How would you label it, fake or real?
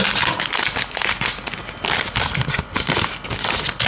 real